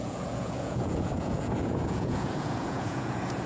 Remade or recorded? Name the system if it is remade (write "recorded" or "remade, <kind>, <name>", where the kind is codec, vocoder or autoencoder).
remade, vocoder, Vocos